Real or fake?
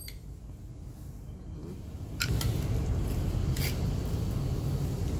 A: real